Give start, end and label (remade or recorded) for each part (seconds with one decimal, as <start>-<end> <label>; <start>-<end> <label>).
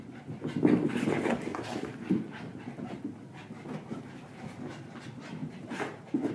0.0-5.4 recorded; 5.4-6.3 remade